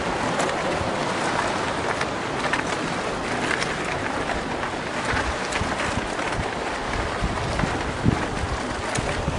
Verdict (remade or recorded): recorded